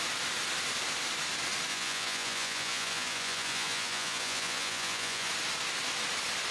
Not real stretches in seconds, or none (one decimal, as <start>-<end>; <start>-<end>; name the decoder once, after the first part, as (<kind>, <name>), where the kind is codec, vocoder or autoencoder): 1.7-5.3 (vocoder, Vocos)